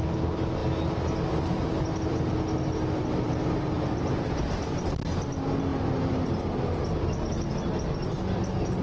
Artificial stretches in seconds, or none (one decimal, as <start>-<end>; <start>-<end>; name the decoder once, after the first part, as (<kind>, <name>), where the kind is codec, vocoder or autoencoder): none